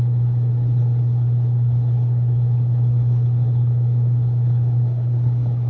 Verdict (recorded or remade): remade